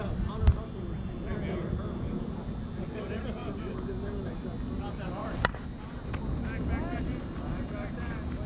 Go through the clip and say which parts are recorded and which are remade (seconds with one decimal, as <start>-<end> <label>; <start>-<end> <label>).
0.0-8.5 recorded